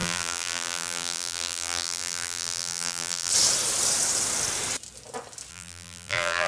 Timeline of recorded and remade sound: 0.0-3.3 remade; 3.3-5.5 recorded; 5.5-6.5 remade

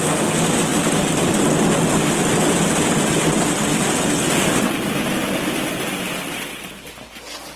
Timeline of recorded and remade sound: 0.0-7.6 recorded